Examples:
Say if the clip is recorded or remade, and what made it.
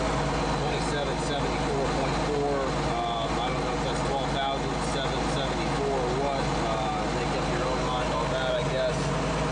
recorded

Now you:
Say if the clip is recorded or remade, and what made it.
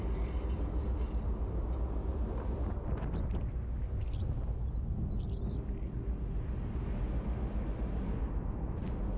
recorded